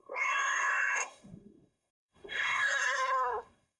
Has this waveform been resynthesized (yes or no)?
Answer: yes